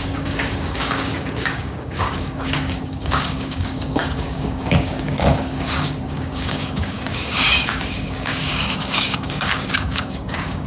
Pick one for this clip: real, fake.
fake